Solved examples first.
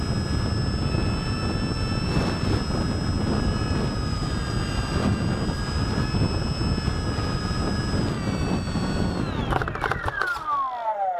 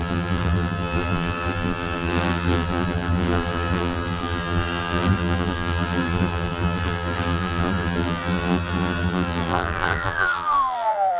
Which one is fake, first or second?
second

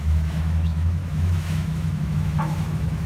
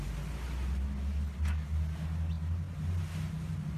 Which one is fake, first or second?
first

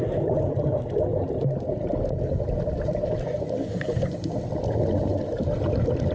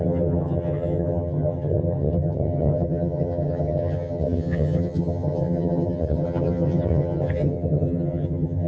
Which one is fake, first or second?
second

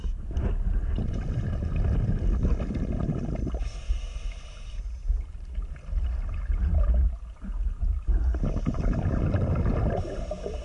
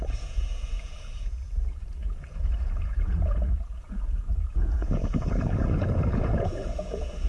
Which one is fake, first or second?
second